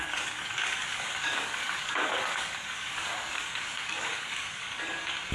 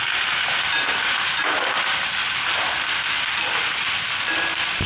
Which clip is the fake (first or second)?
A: first